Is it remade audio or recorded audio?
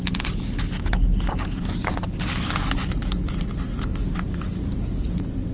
recorded